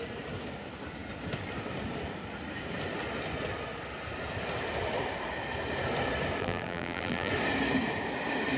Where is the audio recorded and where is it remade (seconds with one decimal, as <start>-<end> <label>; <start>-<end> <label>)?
0.0-6.4 recorded; 6.4-7.3 remade; 7.3-8.6 recorded